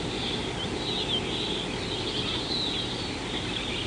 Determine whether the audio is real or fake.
real